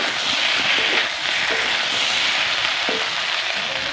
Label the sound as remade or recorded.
recorded